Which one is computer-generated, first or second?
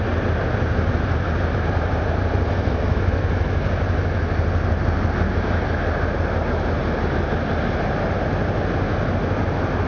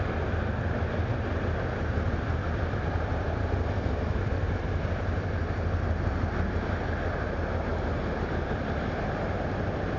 second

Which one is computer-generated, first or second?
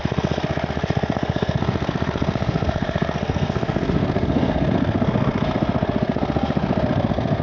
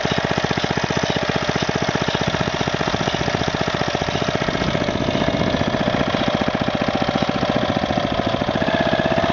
first